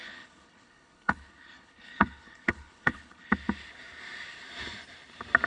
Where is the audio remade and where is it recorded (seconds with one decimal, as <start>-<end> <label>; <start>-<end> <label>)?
0.0-3.3 remade; 3.3-5.5 recorded

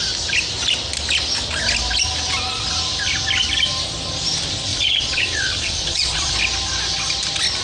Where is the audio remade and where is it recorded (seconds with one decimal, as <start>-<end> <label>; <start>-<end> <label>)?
0.0-4.7 recorded; 4.7-6.3 remade; 6.3-7.6 recorded